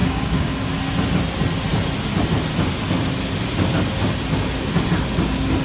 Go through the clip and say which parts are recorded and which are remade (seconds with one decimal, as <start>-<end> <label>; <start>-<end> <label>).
0.0-0.7 remade; 0.7-5.6 recorded